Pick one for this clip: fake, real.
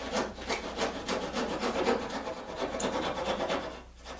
real